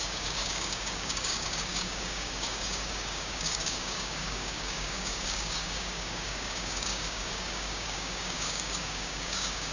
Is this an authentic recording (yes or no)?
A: no